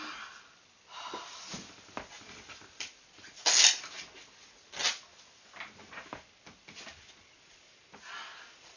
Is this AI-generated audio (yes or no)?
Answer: no